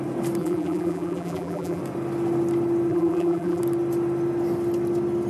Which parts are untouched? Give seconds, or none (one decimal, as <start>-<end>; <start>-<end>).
0.0-0.4; 1.8-2.9; 3.6-5.3